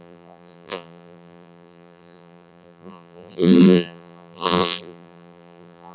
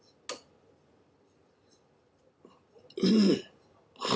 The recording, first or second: second